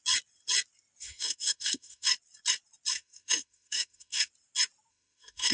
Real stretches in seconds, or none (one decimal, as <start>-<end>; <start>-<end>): 0.0-1.0; 2.1-2.9; 4.3-4.9